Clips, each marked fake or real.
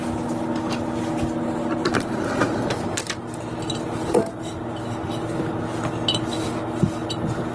real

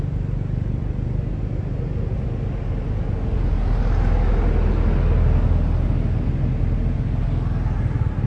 real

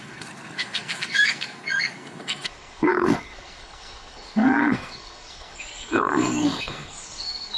fake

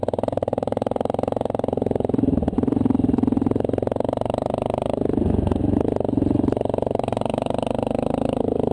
fake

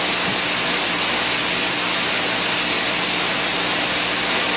real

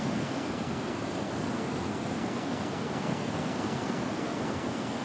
fake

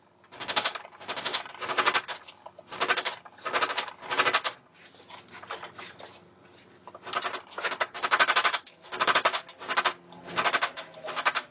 real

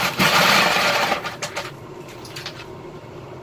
fake